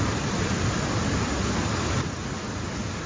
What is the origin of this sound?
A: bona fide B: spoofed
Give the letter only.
A